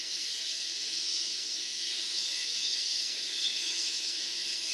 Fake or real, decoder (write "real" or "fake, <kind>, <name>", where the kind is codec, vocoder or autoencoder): fake, codec, SNAC